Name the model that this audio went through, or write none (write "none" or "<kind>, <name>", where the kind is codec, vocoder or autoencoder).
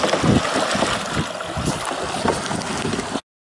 none